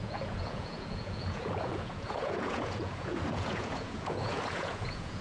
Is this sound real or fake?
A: fake